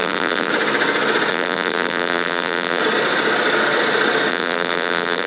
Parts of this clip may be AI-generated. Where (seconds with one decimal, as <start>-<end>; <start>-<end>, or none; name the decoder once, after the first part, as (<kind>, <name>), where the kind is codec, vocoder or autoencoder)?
0.0-0.5 (vocoder, BigVGAN v2); 1.3-2.8; 4.3-5.3